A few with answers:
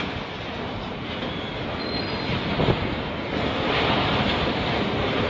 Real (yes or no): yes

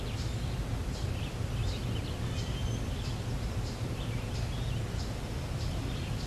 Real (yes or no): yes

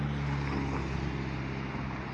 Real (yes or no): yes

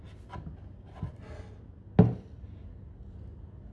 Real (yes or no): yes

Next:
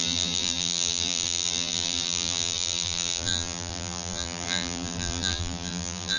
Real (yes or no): no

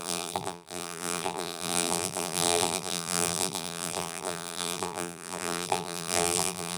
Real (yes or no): no